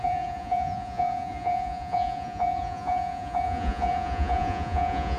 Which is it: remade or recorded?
remade